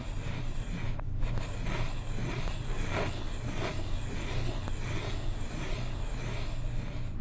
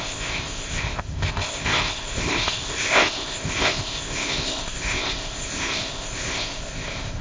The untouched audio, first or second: first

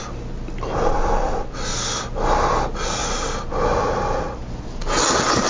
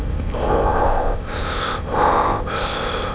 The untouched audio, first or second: first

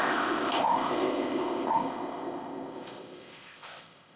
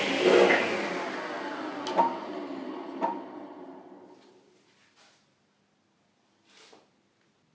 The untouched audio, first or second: second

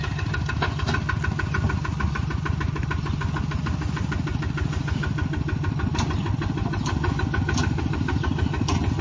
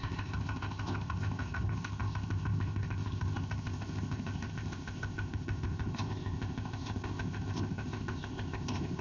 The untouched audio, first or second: first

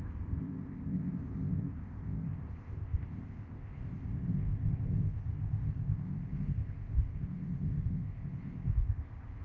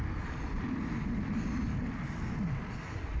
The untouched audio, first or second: second